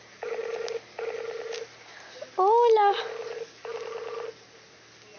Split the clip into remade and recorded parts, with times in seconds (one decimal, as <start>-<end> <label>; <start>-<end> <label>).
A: 0.0-5.2 recorded